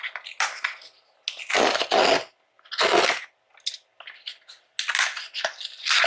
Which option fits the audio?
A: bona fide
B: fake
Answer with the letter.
A